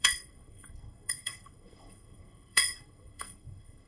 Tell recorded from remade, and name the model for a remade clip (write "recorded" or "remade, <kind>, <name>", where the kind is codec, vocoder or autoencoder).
remade, codec, SNAC